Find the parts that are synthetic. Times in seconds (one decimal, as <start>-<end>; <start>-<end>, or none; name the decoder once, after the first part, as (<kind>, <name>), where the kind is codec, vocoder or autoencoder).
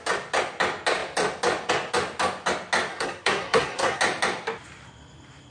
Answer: 2.9-4.0 (codec, SNAC)